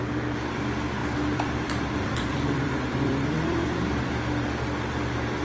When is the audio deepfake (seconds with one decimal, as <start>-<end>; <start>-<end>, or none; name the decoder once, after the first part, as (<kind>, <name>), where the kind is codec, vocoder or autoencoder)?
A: 1.0-4.1 (vocoder, BigVGAN v2)